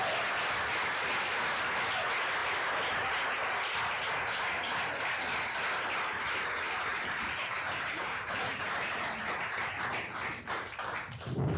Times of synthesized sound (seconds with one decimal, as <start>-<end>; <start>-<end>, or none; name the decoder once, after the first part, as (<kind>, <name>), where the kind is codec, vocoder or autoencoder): 6.9-9.0 (vocoder, BigVGAN v2)